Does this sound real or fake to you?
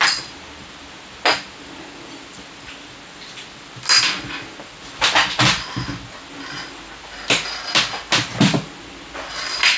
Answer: real